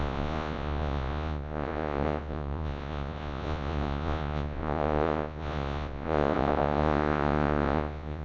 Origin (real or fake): fake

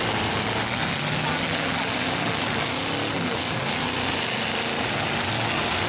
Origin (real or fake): real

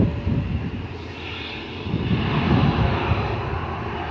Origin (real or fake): real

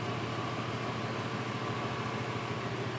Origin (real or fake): real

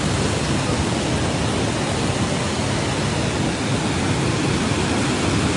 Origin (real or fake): real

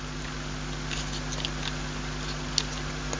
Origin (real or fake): real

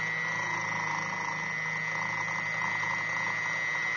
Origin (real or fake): real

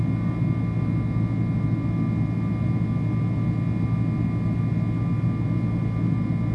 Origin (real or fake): real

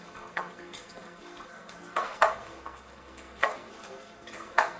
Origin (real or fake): fake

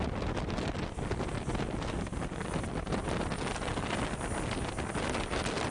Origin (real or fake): real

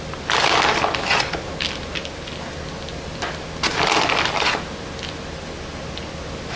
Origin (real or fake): real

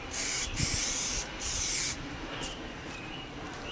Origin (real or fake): fake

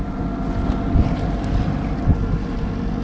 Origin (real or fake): real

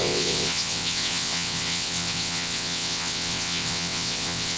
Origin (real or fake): fake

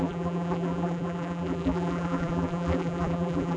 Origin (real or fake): fake